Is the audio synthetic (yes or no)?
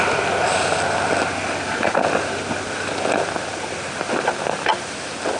no